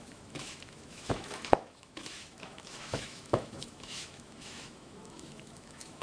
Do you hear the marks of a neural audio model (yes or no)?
yes